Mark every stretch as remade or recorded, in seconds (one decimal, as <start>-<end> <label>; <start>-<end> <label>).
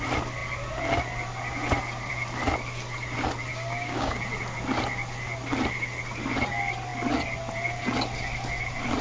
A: 0.0-3.5 recorded; 3.5-4.2 remade; 4.2-9.0 recorded